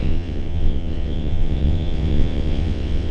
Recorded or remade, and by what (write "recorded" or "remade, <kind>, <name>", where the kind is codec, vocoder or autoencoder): remade, vocoder, WaveNeXt